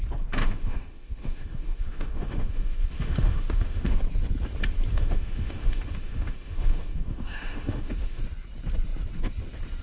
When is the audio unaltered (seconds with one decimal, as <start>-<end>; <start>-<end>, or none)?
0.0-0.4; 4.0-4.9; 8.2-9.8